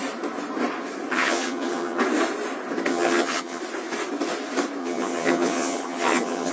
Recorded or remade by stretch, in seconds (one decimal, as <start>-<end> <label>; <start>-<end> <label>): 0.0-1.1 recorded; 1.1-2.0 remade; 2.0-2.9 recorded; 2.9-3.6 remade; 3.6-4.8 recorded; 4.8-6.5 remade